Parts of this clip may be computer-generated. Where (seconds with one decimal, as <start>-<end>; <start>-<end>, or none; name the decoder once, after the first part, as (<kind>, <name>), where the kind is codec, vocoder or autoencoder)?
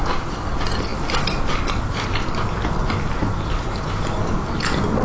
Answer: none